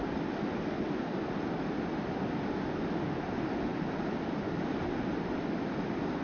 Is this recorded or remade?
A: recorded